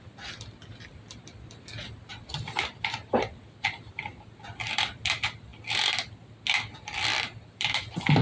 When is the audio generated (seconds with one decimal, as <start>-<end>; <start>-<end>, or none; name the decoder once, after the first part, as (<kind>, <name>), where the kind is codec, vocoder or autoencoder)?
none